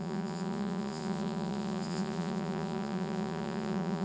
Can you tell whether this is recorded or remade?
remade